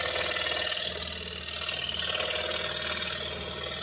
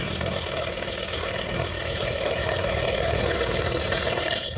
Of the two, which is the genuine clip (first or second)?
first